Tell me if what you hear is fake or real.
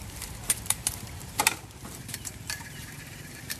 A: fake